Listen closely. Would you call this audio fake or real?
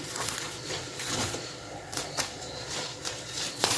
fake